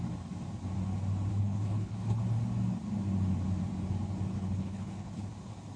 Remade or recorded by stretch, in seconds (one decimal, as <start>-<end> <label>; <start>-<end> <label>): 0.0-1.3 recorded; 1.3-2.2 remade; 2.2-4.3 recorded; 4.3-5.3 remade; 5.3-5.8 recorded